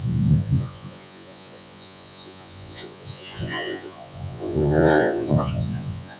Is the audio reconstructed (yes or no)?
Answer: yes